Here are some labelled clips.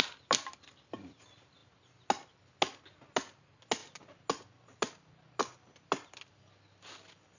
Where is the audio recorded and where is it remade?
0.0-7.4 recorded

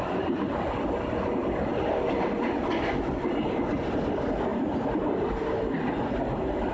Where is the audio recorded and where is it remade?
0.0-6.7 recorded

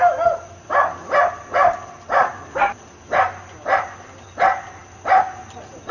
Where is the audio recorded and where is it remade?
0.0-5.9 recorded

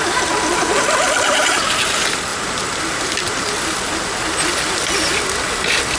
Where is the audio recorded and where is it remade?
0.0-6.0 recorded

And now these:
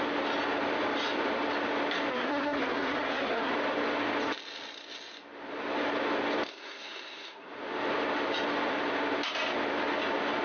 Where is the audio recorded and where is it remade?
0.0-2.1 recorded; 2.1-3.5 remade; 3.5-6.5 recorded; 6.5-7.5 remade; 7.5-10.4 recorded